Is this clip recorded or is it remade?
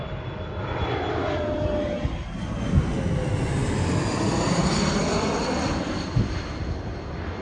recorded